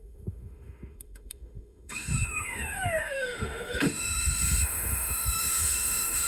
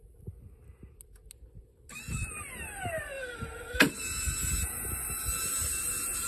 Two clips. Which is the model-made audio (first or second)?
first